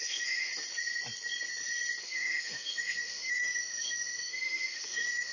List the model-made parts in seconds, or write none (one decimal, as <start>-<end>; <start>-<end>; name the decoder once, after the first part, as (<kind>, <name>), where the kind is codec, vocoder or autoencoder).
0.0-0.5 (autoencoder, DAC-VAE); 2.0-5.3